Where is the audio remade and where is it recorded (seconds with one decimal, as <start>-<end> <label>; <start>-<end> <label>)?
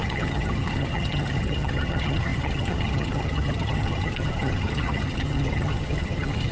0.0-6.5 remade